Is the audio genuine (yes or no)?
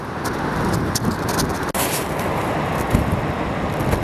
yes